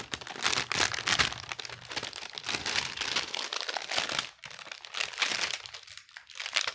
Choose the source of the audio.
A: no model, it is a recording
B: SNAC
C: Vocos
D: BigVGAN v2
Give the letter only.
A